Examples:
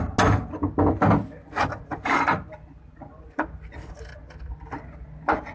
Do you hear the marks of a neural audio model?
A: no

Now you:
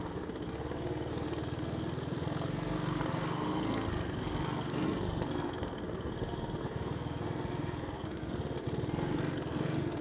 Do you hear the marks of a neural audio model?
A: yes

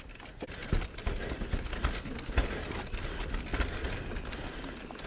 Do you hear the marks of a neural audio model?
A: no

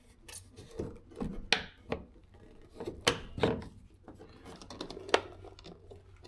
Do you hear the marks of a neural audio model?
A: no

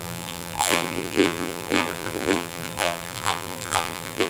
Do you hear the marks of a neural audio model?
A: yes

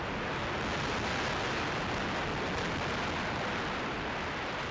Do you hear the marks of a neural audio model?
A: no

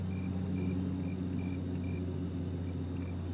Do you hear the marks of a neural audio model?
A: no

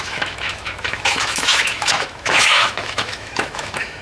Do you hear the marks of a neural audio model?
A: yes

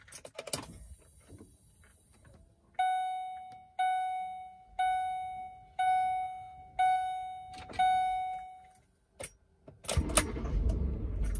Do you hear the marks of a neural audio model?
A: no